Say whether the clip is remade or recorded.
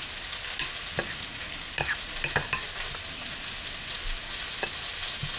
recorded